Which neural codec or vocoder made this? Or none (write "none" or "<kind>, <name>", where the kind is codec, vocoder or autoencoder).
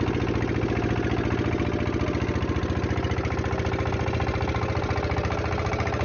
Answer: none